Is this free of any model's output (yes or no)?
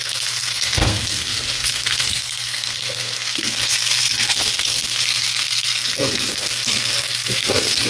no